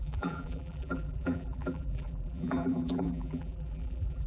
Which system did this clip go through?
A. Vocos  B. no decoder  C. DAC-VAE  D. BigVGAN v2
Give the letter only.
D